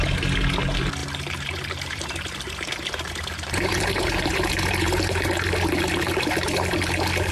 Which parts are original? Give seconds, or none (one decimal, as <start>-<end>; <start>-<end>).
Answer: 0.0-1.0; 5.3-7.3